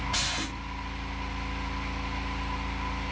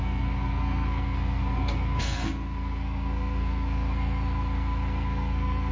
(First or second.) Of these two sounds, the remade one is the second